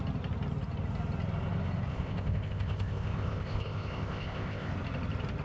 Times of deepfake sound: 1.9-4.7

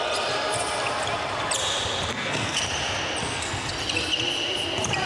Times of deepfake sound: 2.1-2.6; 3.2-3.7

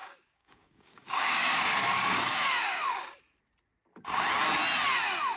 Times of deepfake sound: 0.0-3.2

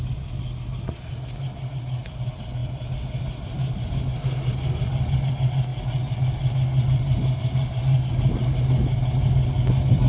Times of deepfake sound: none

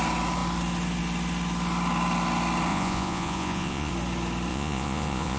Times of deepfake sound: 2.7-3.9; 4.5-5.4

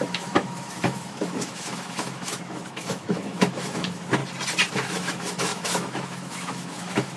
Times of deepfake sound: 0.0-4.2; 4.7-7.2

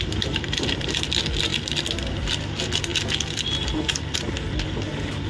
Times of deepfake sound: 0.0-2.9

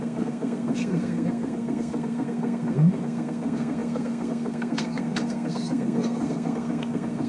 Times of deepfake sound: 0.0-7.3